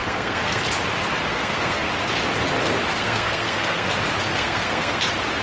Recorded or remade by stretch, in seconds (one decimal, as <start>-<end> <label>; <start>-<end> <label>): 0.0-0.6 remade; 0.6-1.3 recorded; 1.3-1.9 remade; 1.9-2.9 recorded; 2.9-3.9 remade; 3.9-4.3 recorded; 4.3-5.0 remade; 5.0-5.4 recorded

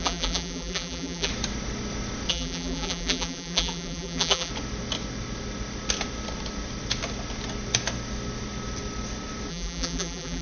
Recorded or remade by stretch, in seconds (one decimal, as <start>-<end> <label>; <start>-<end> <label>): 0.0-1.3 remade; 1.3-2.3 recorded; 2.3-4.5 remade; 4.5-9.5 recorded; 9.5-10.4 remade

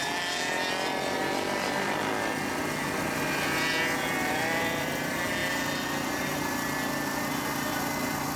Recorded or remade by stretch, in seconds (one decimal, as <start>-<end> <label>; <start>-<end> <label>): 0.0-2.3 remade; 2.3-8.4 recorded

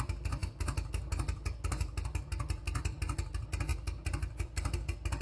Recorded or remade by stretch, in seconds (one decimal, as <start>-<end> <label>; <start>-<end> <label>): 0.0-5.2 recorded

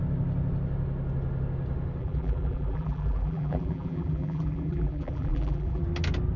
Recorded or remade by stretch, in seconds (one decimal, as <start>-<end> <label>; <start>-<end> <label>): 0.0-2.0 recorded; 2.0-5.8 remade; 5.8-6.4 recorded

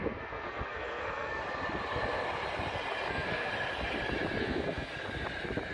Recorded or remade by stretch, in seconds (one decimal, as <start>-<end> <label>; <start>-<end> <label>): 0.0-1.4 remade; 1.4-3.1 recorded; 3.1-3.5 remade; 3.5-4.4 recorded; 4.4-4.9 remade; 4.9-5.7 recorded

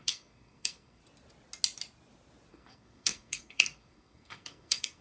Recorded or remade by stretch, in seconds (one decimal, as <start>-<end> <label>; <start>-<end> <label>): 0.0-1.0 remade; 1.0-2.5 recorded; 2.5-5.0 remade

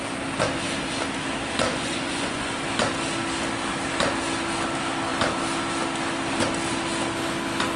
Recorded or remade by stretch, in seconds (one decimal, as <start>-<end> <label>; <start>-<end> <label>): 0.0-1.7 recorded; 1.7-2.5 remade; 2.5-7.8 recorded